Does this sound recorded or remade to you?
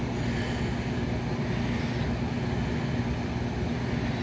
recorded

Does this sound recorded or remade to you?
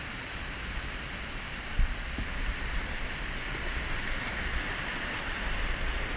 recorded